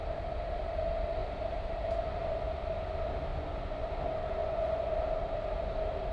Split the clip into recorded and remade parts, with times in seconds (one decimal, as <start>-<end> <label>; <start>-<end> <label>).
0.0-3.3 recorded; 3.3-3.9 remade; 3.9-4.4 recorded; 4.4-4.9 remade; 4.9-6.1 recorded